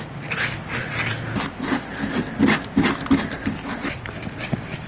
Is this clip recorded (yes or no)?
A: yes